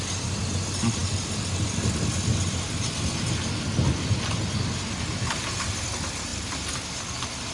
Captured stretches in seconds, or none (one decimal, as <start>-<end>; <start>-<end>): 0.0-7.5